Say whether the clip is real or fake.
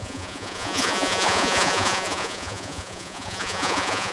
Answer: fake